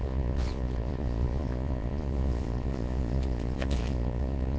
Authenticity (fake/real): fake